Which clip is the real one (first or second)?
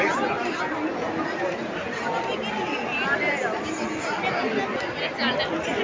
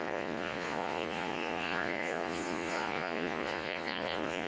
first